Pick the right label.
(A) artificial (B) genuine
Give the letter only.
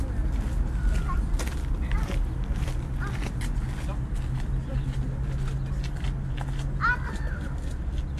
B